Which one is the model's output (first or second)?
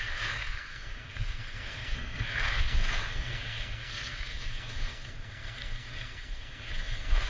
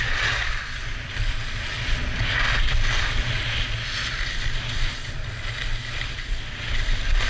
first